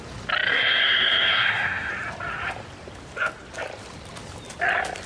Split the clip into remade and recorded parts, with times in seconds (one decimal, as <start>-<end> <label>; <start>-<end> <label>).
0.0-0.5 recorded; 0.5-1.9 remade; 1.9-5.1 recorded